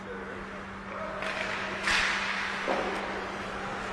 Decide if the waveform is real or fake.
real